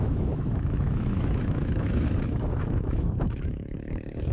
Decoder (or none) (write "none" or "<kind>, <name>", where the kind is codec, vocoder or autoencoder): autoencoder, DAC-VAE